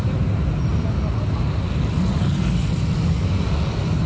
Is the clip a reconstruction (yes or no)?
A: no